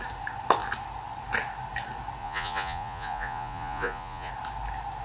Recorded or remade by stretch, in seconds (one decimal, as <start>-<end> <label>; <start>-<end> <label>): 0.0-2.2 recorded; 2.2-4.3 remade; 4.3-5.0 recorded